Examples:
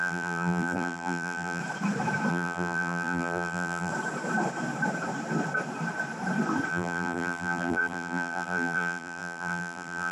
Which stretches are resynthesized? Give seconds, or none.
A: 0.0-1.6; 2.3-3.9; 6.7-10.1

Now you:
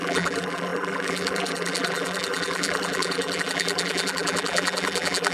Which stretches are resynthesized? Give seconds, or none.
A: 0.0-5.3

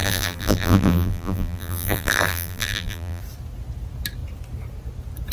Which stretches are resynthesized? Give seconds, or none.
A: 0.0-3.2

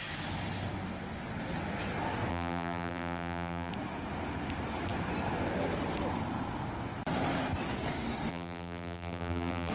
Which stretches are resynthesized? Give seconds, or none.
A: 2.3-3.7; 8.3-9.7